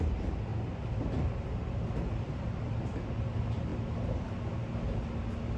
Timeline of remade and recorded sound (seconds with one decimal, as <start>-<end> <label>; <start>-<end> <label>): 0.0-5.6 recorded